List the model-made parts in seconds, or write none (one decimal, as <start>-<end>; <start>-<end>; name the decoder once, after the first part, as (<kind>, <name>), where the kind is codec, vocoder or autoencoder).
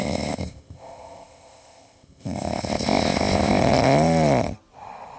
0.0-3.6 (codec, ZipCodec)